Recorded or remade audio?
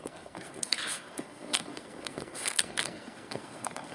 remade